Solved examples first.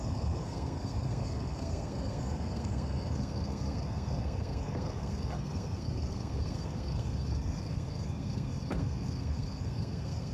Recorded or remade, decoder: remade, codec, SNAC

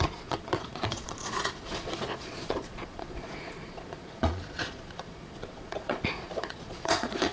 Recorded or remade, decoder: remade, vocoder, Vocos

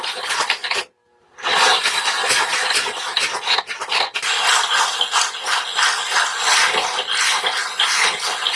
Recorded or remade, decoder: recorded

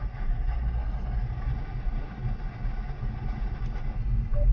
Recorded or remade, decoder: recorded